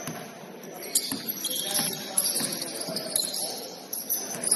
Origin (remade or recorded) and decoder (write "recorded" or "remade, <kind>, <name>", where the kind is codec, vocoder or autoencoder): recorded